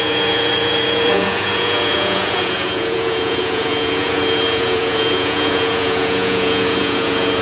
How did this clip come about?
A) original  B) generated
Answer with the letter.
B